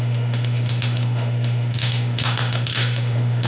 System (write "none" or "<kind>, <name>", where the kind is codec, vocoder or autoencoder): autoencoder, DAC-VAE